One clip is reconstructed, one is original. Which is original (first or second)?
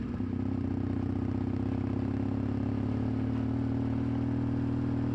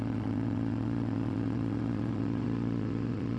first